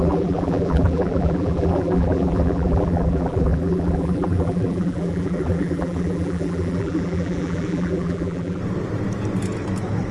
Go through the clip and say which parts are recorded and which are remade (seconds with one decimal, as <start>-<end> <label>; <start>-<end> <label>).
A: 0.0-8.6 remade; 8.6-10.1 recorded